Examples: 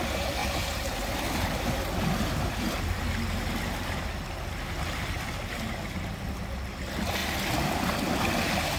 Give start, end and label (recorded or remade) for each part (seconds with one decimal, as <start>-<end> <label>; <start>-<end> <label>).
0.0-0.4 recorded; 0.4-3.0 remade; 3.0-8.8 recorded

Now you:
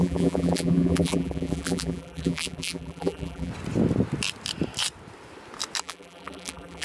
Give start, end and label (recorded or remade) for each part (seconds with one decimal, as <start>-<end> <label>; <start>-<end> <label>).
0.0-3.5 remade; 3.5-5.8 recorded; 5.8-6.8 remade

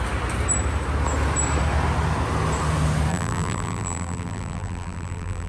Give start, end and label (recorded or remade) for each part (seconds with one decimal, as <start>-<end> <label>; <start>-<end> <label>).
0.0-3.1 recorded; 3.1-5.5 remade

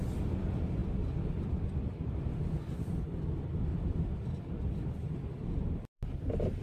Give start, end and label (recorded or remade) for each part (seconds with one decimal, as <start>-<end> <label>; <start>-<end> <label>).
0.0-3.7 recorded; 3.7-5.5 remade; 5.5-6.0 recorded; 6.0-6.6 remade

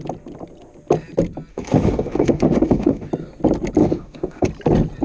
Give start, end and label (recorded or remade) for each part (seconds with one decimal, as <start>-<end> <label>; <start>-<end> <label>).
0.0-1.5 recorded; 1.5-3.1 remade; 3.1-3.8 recorded; 3.8-4.5 remade; 4.5-5.0 recorded